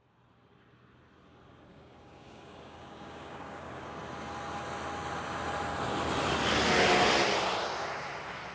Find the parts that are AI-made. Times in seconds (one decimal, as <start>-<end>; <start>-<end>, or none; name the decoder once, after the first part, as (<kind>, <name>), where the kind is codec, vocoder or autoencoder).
1.7-4.0 (codec, DAC)